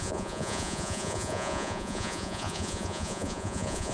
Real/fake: fake